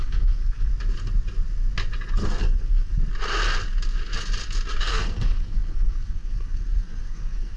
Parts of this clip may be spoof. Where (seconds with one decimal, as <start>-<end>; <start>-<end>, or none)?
0.0-0.7; 2.4-2.9; 4.8-7.6